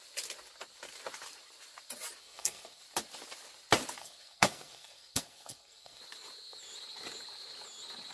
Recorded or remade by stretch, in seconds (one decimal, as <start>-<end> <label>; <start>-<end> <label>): 0.0-2.2 recorded; 2.2-2.8 remade; 2.8-4.0 recorded; 4.0-6.0 remade; 6.0-8.1 recorded